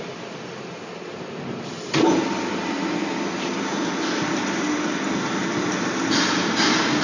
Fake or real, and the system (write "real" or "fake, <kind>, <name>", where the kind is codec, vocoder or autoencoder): real